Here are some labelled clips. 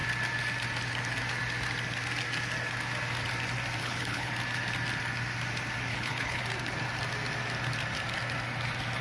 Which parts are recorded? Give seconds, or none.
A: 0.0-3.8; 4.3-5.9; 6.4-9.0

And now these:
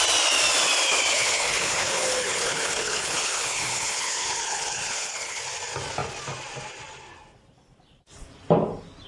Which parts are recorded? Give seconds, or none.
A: 0.0-1.1; 5.4-9.1

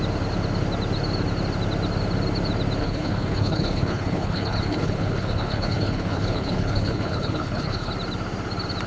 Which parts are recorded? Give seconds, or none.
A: 0.0-2.8; 7.9-8.9

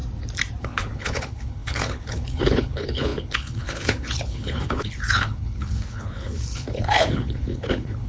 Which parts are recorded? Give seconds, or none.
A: 0.0-0.6

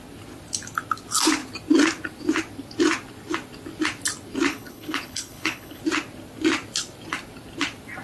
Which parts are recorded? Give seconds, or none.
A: 0.0-4.5; 5.8-8.0